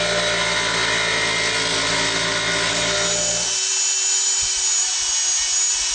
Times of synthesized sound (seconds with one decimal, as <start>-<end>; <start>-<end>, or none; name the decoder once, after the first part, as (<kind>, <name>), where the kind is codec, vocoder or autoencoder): none